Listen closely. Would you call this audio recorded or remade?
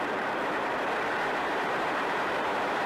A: remade